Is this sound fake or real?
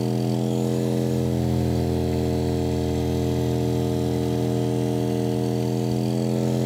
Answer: real